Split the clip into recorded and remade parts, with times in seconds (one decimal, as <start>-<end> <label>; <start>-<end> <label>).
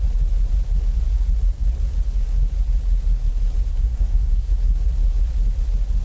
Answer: 0.0-3.7 recorded; 3.7-4.5 remade; 4.5-6.0 recorded